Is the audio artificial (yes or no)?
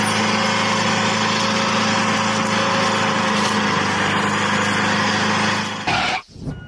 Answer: no